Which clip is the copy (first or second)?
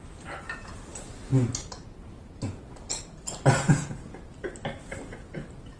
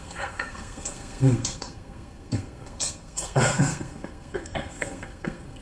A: second